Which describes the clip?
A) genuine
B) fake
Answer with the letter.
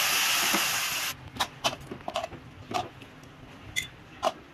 A